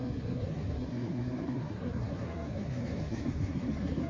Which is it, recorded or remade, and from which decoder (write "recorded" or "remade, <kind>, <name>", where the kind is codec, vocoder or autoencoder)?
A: remade, codec, SNAC